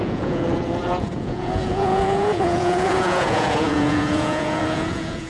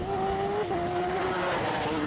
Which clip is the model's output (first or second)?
first